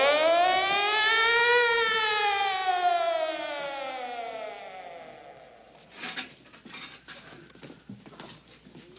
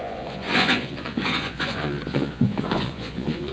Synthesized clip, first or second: second